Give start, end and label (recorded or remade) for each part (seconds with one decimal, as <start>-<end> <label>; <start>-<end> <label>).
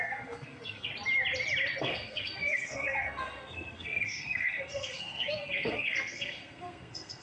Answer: 0.0-0.9 remade; 0.9-1.8 recorded; 1.8-7.2 remade